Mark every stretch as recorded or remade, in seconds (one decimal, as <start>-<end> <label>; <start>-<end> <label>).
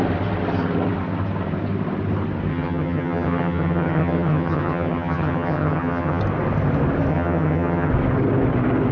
0.0-2.5 recorded; 2.5-6.2 remade; 6.2-7.1 recorded; 7.1-7.9 remade; 7.9-8.9 recorded